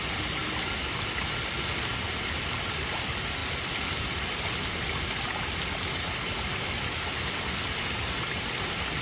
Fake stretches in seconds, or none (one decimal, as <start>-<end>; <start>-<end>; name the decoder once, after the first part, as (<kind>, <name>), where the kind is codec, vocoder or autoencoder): none

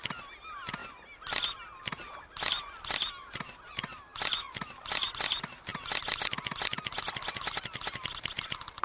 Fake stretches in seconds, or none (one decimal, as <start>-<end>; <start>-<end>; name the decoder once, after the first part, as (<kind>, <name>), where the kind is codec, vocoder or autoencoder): none

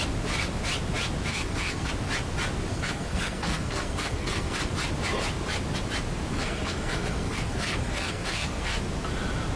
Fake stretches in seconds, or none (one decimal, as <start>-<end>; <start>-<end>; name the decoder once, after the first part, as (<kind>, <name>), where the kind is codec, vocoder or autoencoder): 1.3-1.9 (codec, SNAC); 2.7-4.7; 6.3-8.8

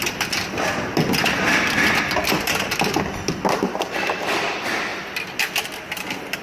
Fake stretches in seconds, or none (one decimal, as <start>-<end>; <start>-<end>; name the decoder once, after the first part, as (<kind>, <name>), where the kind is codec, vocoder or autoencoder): none

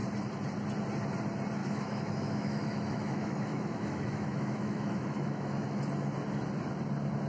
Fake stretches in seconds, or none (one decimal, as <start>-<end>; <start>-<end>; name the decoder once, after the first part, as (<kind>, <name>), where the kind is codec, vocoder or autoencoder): 1.6-5.8 (autoencoder, DAC-VAE)

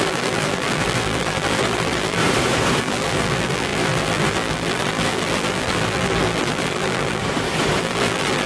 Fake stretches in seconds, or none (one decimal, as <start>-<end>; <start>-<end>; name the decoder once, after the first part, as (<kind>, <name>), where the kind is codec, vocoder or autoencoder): 0.0-2.2 (vocoder, BigVGAN v2); 2.8-7.2; 7.8-8.5

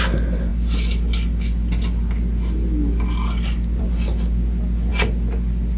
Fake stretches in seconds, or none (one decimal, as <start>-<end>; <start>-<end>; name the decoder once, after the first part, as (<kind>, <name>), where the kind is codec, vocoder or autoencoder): none

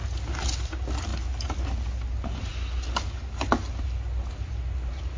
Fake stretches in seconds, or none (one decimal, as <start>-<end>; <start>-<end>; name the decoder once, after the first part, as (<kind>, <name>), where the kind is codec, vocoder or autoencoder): none